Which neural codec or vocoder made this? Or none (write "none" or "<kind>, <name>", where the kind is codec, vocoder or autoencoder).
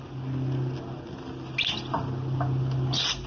none